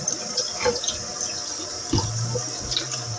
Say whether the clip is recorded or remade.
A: recorded